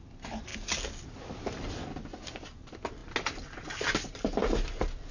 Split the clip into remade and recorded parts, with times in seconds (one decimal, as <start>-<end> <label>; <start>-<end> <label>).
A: 0.0-5.1 recorded